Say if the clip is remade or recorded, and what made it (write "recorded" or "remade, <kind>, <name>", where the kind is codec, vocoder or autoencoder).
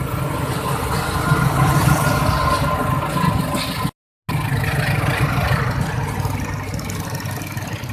recorded